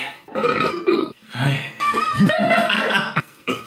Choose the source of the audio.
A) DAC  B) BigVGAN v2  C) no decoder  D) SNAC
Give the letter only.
D